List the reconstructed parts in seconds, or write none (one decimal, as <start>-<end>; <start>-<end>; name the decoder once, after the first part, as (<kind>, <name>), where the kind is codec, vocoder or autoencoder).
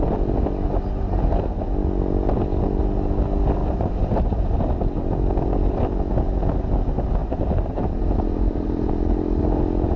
3.6-4.7 (vocoder, BigVGAN v2); 7.2-9.4